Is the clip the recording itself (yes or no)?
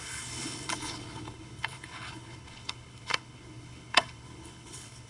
no